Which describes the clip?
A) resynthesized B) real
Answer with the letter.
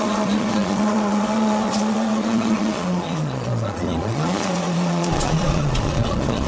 A